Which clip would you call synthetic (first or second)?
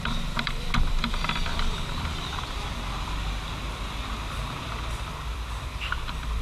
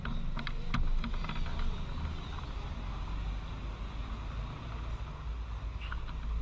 first